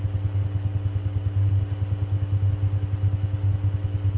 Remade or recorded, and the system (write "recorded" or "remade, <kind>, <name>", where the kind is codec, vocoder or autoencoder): recorded